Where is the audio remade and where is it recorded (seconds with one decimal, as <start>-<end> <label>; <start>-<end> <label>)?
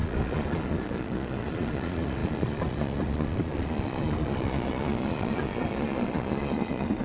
0.0-7.0 remade